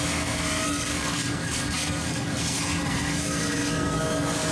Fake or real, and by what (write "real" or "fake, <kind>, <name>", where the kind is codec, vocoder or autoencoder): fake, codec, SNAC